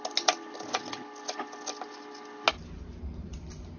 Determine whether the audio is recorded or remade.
recorded